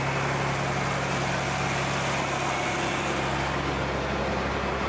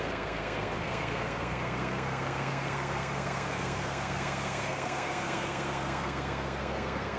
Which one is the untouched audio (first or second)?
first